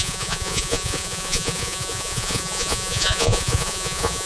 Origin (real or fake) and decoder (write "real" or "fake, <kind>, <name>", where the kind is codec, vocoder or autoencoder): fake, vocoder, Vocos